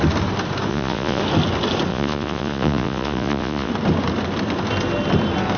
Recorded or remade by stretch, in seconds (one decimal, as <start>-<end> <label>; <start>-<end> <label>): 0.0-0.7 recorded; 0.7-1.2 remade; 1.2-1.9 recorded; 1.9-3.7 remade; 3.7-5.6 recorded